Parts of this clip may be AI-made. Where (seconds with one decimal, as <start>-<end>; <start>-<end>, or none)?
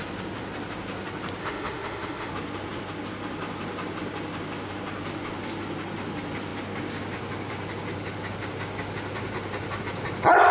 1.4-2.3